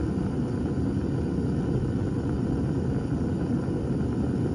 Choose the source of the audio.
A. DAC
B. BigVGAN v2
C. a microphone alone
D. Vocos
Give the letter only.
C